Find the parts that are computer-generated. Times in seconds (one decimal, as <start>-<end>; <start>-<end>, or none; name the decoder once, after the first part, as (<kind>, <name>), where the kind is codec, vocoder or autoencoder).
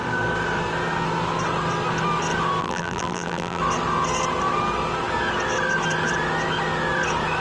2.6-3.6 (vocoder, BigVGAN v2)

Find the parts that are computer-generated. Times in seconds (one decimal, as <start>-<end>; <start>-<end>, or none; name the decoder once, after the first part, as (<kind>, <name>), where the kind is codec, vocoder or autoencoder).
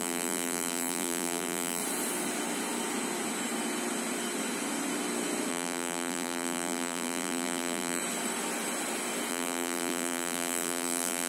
0.0-1.8 (vocoder, BigVGAN v2); 5.5-8.0; 9.3-11.3